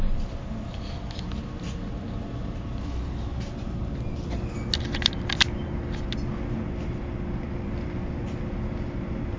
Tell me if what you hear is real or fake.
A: real